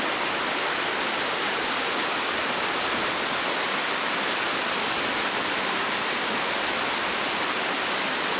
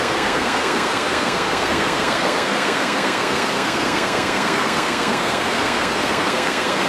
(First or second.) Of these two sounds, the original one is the first